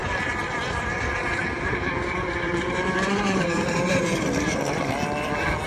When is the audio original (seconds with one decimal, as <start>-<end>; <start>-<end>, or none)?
0.0-1.5; 4.9-5.7